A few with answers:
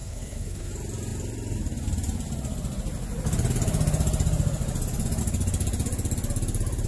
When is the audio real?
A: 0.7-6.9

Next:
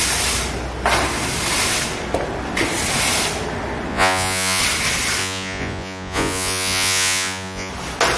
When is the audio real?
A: 0.0-3.9; 4.6-5.2; 7.7-8.2

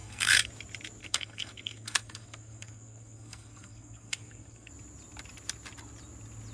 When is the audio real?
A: 0.5-1.0; 4.7-6.5

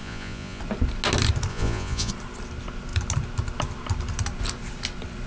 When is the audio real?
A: 0.6-1.5; 2.1-5.3

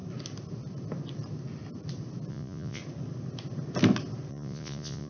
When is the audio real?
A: 0.0-2.3; 2.8-4.3

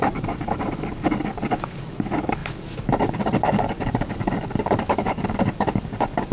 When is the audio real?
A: none